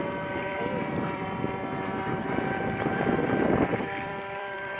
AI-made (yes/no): yes